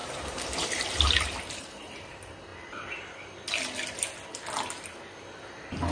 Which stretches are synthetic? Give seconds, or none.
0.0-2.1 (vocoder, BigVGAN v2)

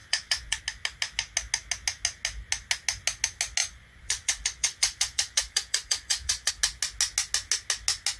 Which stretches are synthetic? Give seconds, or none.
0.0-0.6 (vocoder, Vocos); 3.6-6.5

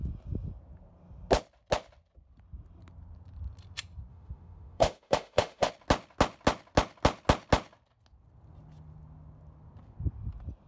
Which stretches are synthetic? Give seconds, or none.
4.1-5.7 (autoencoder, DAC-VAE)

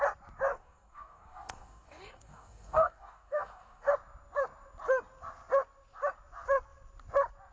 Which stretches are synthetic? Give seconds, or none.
0.5-3.9 (codec, DAC)

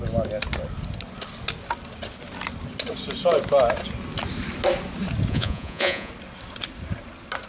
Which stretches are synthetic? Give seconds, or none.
5.3-6.1 (vocoder, Vocos)

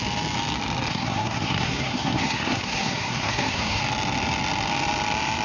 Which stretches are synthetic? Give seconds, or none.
0.9-3.8 (codec, SNAC)

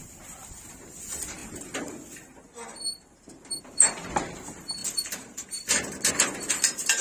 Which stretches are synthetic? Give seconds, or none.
0.7-4.8 (vocoder, BigVGAN v2); 6.1-7.0